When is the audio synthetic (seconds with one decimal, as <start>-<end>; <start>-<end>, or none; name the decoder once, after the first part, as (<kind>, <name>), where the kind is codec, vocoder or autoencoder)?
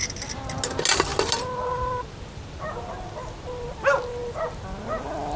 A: none